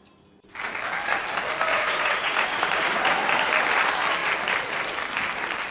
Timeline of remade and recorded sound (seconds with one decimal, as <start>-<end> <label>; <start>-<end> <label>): 0.0-1.7 recorded; 1.7-3.1 remade; 3.1-5.7 recorded